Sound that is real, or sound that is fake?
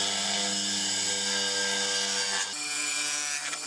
real